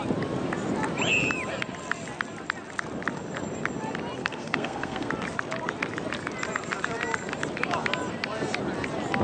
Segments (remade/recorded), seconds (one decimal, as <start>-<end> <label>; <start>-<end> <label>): 0.0-4.2 recorded; 4.2-5.1 remade; 5.1-9.2 recorded